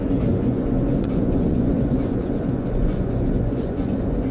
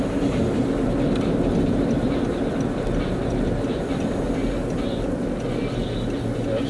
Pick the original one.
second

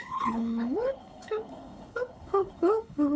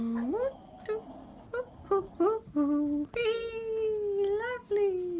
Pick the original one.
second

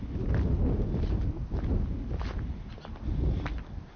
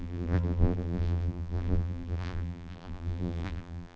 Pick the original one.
first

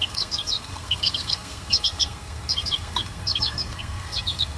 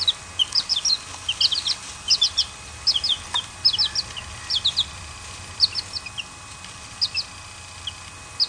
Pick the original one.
second